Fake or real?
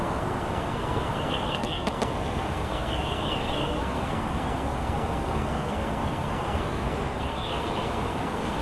fake